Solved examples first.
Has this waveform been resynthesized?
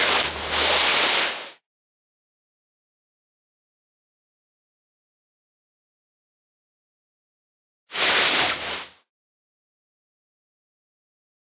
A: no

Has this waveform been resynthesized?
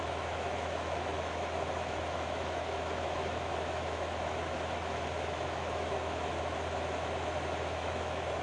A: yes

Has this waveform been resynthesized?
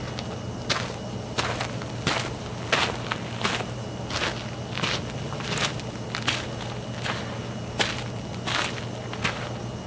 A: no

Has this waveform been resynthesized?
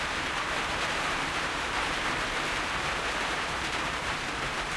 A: yes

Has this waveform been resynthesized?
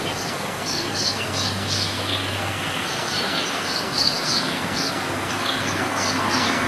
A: yes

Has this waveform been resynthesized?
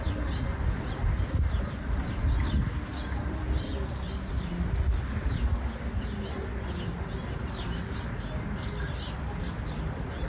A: no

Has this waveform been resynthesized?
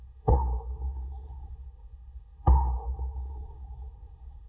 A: yes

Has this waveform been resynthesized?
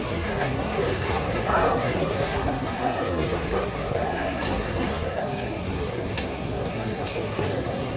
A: yes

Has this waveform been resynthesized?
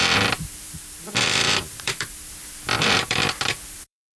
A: yes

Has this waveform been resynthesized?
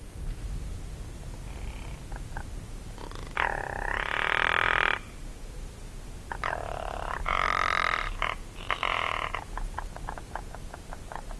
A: no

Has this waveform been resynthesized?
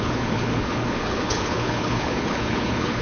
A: yes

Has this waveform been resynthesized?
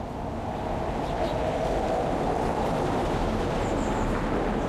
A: no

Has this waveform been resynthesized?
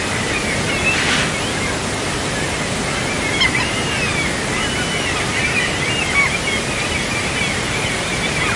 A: no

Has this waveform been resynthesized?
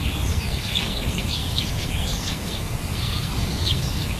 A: yes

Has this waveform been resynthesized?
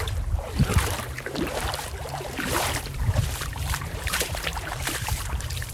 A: yes